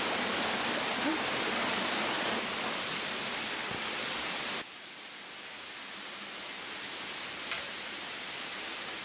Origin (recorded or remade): recorded